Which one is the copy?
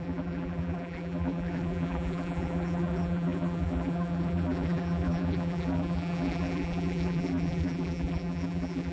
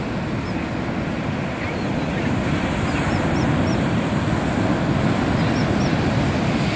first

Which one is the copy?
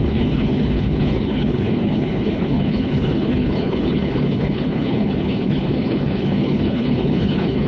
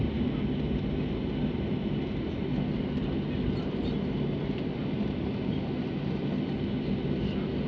first